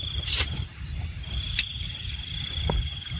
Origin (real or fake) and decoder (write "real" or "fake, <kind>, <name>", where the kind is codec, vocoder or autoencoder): fake, vocoder, BigVGAN v2